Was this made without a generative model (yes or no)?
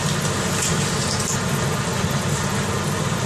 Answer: yes